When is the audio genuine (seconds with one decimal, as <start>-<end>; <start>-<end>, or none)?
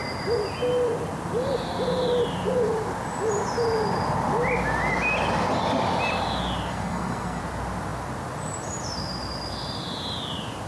0.0-6.7; 7.4-10.7